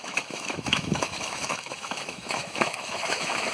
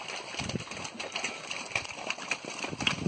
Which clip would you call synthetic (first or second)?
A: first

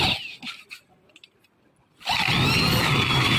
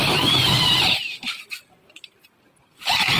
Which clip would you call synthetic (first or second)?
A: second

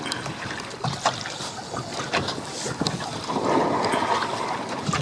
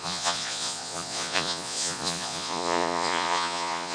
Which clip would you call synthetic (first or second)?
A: second